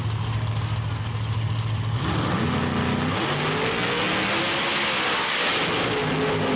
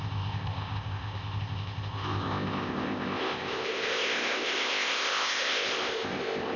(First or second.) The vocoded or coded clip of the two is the second